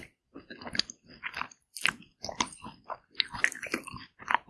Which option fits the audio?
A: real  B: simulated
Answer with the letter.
A